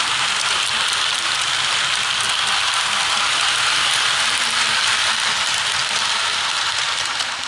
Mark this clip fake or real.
real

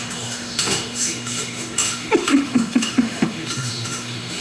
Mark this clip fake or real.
fake